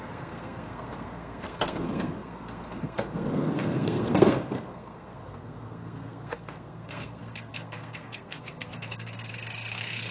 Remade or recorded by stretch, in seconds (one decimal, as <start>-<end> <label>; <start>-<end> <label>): 0.0-10.1 remade